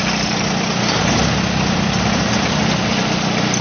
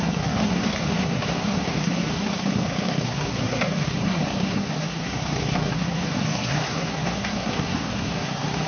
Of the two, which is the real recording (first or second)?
first